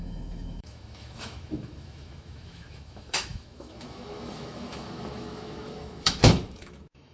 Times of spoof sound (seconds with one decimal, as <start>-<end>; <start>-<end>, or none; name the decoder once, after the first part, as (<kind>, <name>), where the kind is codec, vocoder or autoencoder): 0.0-7.1 (autoencoder, DAC-VAE)